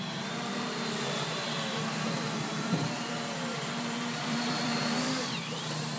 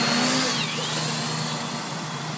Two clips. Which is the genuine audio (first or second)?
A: second